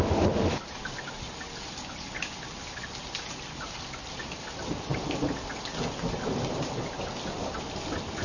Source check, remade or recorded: recorded